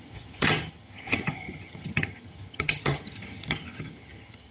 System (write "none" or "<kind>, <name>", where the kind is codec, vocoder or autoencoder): vocoder, HiFi-GAN